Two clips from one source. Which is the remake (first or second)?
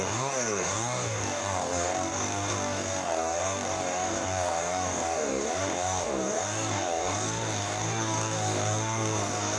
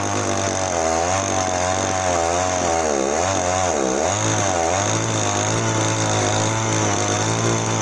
first